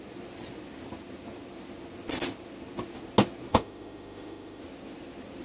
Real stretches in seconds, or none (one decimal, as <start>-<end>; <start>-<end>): 0.0-3.5; 4.6-5.4